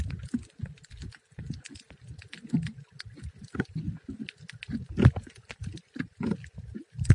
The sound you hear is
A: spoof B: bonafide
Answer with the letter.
B